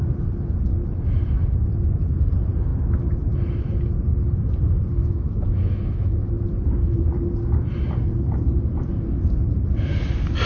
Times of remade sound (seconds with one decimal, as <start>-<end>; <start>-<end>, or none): 5.0-6.3